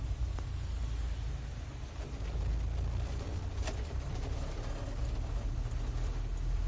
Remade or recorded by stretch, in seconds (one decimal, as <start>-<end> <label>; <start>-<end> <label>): 0.0-3.6 recorded; 3.6-4.9 remade; 4.9-6.7 recorded

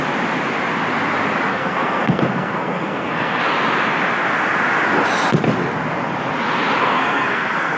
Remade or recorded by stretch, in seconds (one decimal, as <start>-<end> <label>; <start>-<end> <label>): 0.0-1.5 recorded; 1.5-3.4 remade; 3.4-6.8 recorded; 6.8-7.8 remade

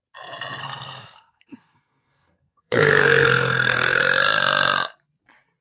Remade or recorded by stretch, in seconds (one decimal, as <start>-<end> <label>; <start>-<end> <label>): 0.0-0.6 recorded; 0.6-4.0 remade; 4.0-5.6 recorded

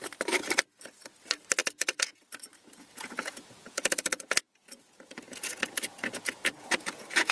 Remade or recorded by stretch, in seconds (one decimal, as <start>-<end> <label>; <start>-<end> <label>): 0.0-1.6 recorded; 1.6-2.2 remade; 2.2-2.6 recorded; 2.6-7.3 remade

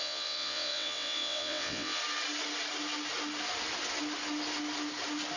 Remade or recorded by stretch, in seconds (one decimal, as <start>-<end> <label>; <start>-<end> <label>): 0.0-2.0 remade; 2.0-5.4 recorded

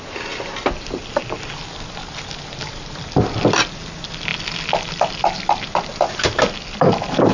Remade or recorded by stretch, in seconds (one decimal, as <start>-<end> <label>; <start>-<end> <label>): 0.0-7.3 recorded